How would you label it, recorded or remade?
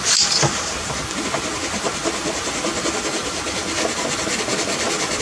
recorded